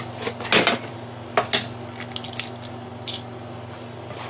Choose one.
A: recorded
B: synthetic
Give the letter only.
A